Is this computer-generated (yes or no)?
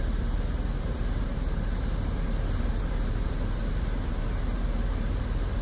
yes